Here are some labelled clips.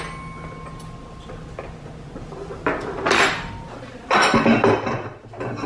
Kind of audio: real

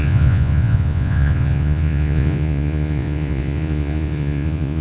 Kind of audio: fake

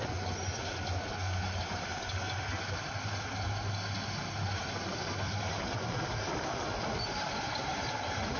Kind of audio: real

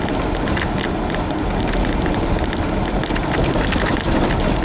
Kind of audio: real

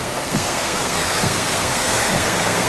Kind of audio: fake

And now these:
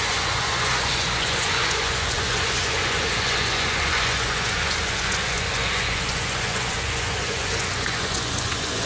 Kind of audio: fake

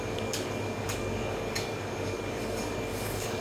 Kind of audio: fake